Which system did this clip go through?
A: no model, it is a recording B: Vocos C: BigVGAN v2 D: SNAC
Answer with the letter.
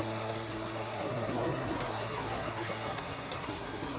D